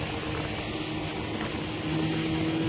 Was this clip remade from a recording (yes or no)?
no